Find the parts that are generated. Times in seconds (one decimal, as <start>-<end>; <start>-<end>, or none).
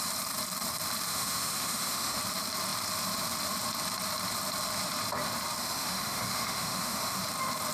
1.1-2.2; 5.6-7.2